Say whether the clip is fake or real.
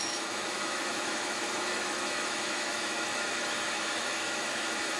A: fake